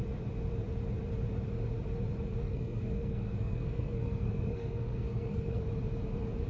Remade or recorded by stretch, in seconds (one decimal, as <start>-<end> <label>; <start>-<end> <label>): 0.0-2.4 recorded; 2.4-5.6 remade; 5.6-6.5 recorded